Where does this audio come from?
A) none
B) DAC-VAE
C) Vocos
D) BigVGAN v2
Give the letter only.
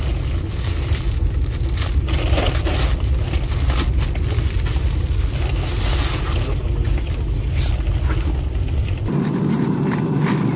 A